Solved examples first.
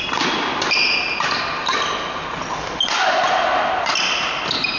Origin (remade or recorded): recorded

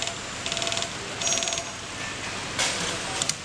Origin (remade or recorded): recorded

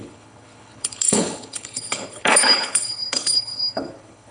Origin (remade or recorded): remade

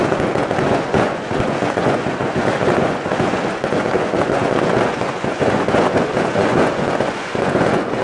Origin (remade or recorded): remade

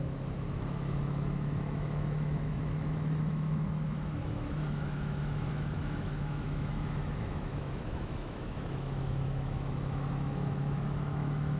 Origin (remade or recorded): remade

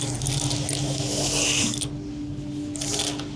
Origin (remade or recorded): recorded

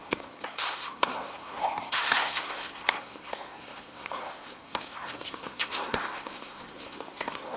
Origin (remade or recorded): remade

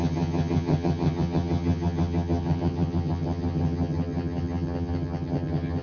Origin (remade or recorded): remade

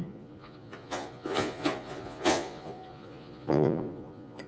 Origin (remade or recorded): remade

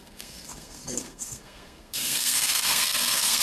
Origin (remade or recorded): remade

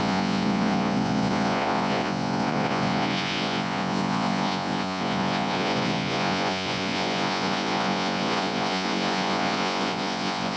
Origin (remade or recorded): remade